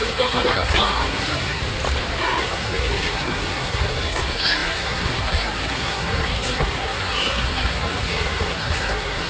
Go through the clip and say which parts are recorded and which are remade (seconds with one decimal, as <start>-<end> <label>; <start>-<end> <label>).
0.0-1.6 remade; 1.6-2.2 recorded; 2.2-9.3 remade